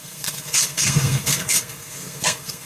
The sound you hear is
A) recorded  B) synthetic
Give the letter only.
B